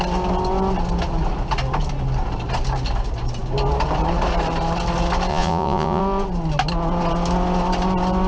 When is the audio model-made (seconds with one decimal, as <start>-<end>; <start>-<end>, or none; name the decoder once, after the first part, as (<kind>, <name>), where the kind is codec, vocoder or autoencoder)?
5.3-6.0 (vocoder, Vocos)